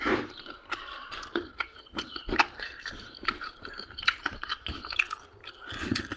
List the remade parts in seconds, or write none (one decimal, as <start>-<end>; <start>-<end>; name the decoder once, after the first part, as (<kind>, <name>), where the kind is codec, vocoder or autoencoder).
0.0-5.3 (vocoder, BigVGAN v2)